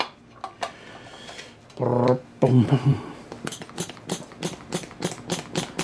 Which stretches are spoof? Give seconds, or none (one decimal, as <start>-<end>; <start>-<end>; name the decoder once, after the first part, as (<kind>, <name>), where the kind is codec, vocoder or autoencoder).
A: 1.9-5.8 (vocoder, BigVGAN v2)